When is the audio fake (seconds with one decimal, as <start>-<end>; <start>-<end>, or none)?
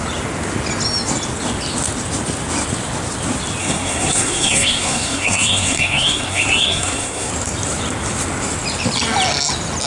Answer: 3.6-7.3